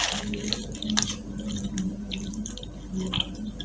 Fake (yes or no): no